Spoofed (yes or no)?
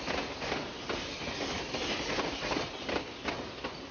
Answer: no